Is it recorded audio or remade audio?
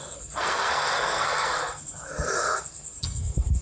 remade